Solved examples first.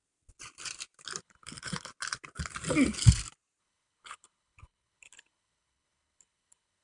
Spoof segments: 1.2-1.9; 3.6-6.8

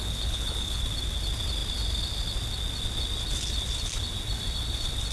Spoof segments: 0.0-0.8